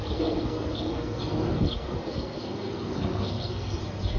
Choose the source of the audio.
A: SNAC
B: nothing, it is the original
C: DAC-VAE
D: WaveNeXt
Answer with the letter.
A